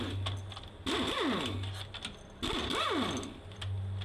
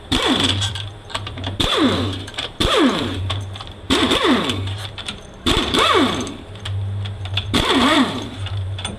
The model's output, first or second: second